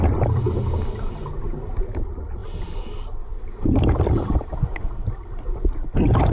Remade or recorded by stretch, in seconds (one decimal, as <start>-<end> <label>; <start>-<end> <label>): 0.0-6.3 recorded